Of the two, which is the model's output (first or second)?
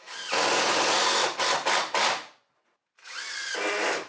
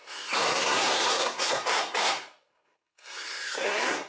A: second